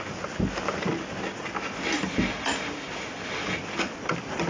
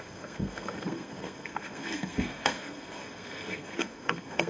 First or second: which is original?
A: first